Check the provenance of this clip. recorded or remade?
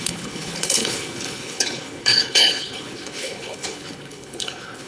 remade